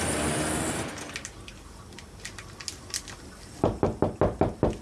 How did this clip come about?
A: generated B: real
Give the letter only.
B